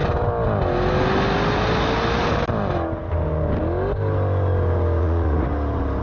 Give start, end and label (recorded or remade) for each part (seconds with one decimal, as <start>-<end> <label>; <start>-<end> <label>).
0.0-5.0 recorded; 5.0-5.5 remade; 5.5-6.0 recorded